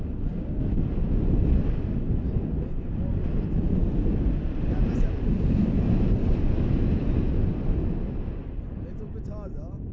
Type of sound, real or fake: real